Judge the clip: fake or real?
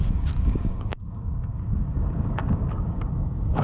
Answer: fake